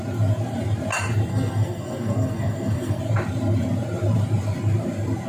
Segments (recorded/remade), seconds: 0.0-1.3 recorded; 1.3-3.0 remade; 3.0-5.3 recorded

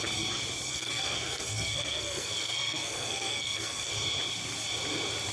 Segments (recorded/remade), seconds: 0.0-0.7 recorded; 0.7-3.9 remade; 3.9-5.3 recorded

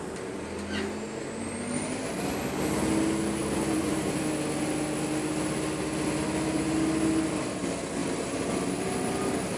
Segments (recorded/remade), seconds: 0.0-3.4 recorded; 3.4-4.2 remade; 4.2-8.0 recorded; 8.0-8.7 remade; 8.7-9.6 recorded

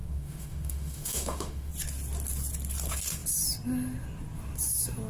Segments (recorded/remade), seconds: 0.0-1.7 remade; 1.7-5.1 recorded

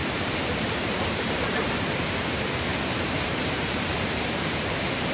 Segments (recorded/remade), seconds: 0.0-5.1 remade

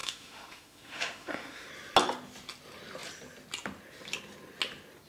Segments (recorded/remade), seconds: 0.0-1.7 remade; 1.7-5.1 recorded

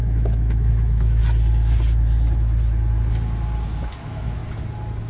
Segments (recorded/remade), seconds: 0.0-1.2 remade; 1.2-4.0 recorded; 4.0-4.4 remade; 4.4-5.1 recorded

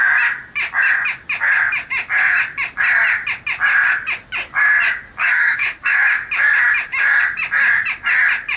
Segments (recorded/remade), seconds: 0.0-5.2 recorded; 5.2-6.0 remade; 6.0-8.6 recorded